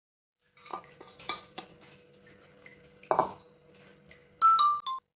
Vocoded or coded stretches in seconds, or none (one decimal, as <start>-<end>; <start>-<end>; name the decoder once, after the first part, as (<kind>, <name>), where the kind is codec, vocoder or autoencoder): 0.7-1.8 (vocoder, Vocos)